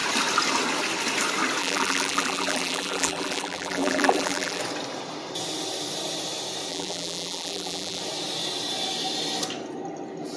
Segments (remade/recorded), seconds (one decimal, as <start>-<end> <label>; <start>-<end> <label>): 0.0-1.6 recorded; 1.6-4.6 remade; 4.6-6.7 recorded; 6.7-8.0 remade; 8.0-10.4 recorded